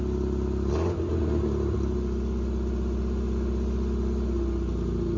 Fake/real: real